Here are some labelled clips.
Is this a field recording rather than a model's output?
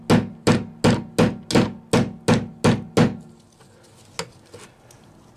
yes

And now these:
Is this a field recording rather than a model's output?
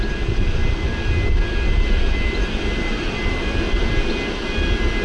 yes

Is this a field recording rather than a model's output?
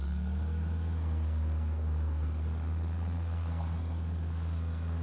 no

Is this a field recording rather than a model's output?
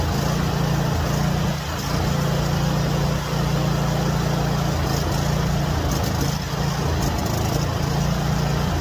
yes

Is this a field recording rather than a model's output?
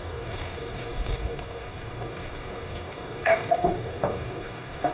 no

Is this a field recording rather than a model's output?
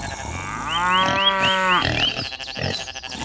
yes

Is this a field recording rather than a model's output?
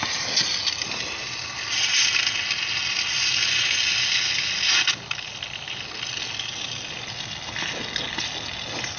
yes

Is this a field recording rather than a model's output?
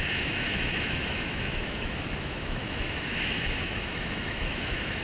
no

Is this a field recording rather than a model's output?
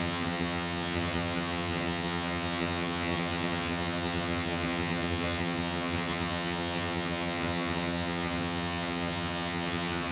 no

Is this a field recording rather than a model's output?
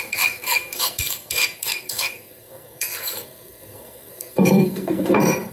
no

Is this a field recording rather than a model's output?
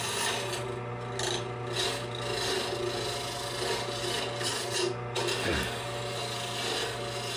yes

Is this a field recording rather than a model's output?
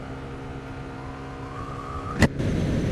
yes